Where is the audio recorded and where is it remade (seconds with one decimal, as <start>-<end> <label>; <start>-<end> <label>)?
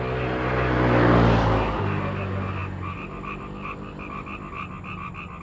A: 0.0-5.4 recorded